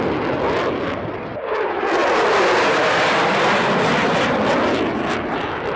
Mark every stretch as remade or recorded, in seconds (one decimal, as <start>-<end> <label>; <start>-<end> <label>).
0.0-2.0 remade; 2.0-2.9 recorded; 2.9-5.8 remade